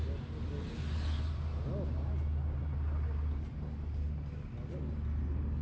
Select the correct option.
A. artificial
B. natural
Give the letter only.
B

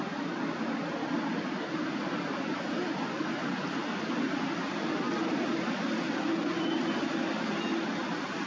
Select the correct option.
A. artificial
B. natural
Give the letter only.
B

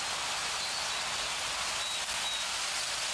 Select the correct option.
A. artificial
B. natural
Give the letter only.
B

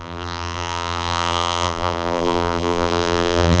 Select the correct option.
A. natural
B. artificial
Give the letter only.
B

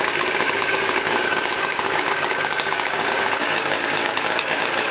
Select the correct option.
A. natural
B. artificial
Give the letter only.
B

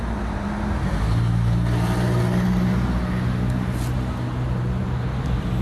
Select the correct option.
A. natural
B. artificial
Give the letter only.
A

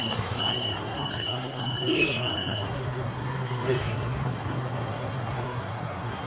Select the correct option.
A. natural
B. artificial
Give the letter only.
B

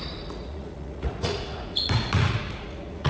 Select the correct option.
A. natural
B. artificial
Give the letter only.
B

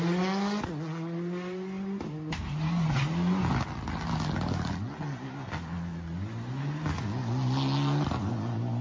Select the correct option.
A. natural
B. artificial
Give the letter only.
A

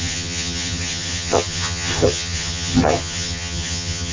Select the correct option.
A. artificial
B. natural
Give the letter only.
A